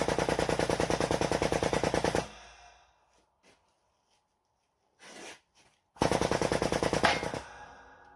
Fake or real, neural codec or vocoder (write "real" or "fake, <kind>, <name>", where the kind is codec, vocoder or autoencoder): real